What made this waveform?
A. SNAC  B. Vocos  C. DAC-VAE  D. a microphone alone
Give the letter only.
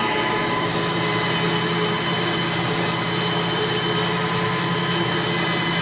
D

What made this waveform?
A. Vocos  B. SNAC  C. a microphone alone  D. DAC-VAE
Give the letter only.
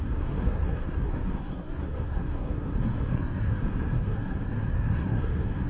B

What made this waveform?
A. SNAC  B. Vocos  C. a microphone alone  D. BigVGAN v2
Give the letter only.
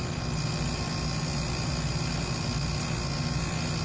C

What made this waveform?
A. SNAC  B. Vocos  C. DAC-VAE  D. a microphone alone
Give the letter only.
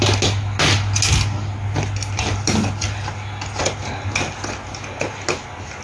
D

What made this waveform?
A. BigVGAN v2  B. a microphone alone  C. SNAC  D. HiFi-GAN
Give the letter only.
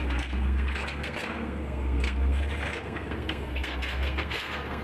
C